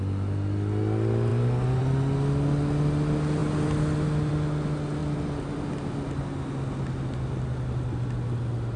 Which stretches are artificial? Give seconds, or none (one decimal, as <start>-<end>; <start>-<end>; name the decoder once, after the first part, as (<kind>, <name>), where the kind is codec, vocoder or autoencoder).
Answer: none